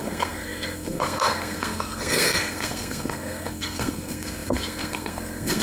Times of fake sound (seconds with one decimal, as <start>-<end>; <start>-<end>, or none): 0.0-5.6